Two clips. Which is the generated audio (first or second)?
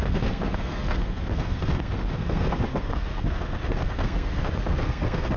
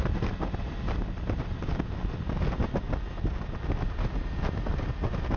first